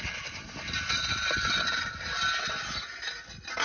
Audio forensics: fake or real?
real